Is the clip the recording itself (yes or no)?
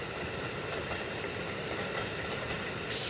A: yes